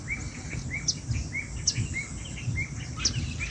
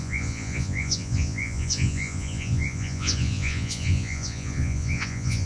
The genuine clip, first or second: first